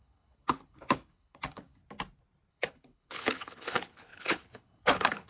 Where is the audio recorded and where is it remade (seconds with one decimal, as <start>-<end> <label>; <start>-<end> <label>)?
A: 0.0-1.8 remade; 1.8-2.5 recorded; 2.5-5.3 remade